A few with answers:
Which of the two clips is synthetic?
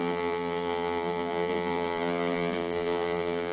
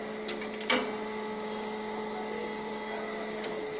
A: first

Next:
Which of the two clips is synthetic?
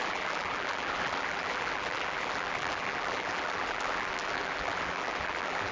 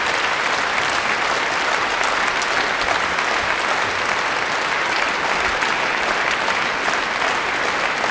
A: first